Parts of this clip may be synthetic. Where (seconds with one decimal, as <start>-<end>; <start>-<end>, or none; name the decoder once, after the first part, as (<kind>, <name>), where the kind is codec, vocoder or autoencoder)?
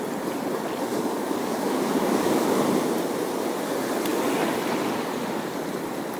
0.9-2.6 (codec, DAC)